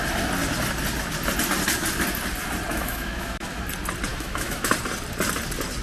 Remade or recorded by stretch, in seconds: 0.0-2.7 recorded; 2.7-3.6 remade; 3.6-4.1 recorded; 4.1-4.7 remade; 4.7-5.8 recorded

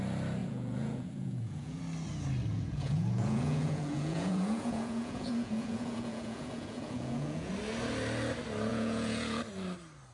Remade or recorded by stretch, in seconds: 0.0-0.4 recorded; 0.4-1.8 remade; 1.8-2.5 recorded; 2.5-7.5 remade; 7.5-8.7 recorded; 8.7-9.4 remade; 9.4-10.1 recorded

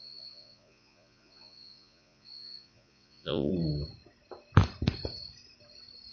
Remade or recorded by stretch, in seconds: 0.0-3.5 remade; 3.5-6.1 recorded

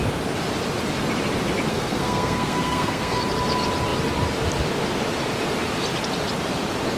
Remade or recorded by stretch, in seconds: 0.0-1.7 recorded; 1.7-3.2 remade; 3.2-7.0 recorded

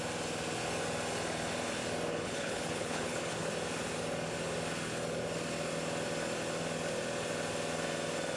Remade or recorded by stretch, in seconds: 0.0-2.1 recorded; 2.1-3.5 remade; 3.5-8.4 recorded

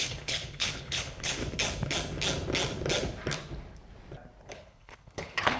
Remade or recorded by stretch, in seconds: 0.0-1.4 remade; 1.4-4.5 recorded; 4.5-5.6 remade

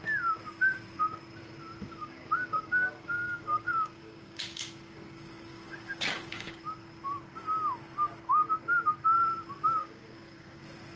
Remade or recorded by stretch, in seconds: 0.0-2.0 recorded; 2.0-6.6 remade; 6.6-9.8 recorded; 9.8-10.6 remade; 10.6-11.0 recorded

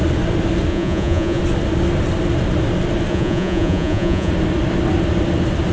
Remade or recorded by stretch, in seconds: 0.0-0.7 recorded; 0.7-1.4 remade; 1.4-3.1 recorded; 3.1-4.3 remade; 4.3-5.7 recorded